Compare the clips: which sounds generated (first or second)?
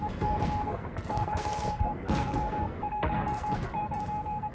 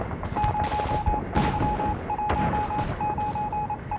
first